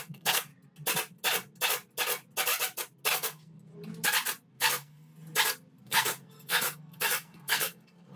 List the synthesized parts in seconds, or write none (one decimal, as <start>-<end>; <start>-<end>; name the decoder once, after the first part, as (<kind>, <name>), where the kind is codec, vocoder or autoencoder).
0.0-0.5 (codec, SNAC); 3.1-3.7; 4.5-5.1; 5.8-8.2